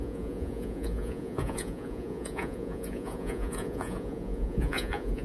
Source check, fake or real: fake